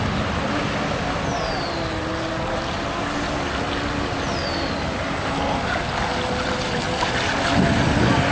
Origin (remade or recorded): recorded